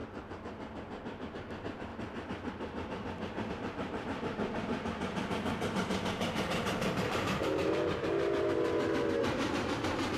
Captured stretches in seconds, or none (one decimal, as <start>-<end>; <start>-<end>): 1.9-3.5; 4.7-5.7; 7.6-9.2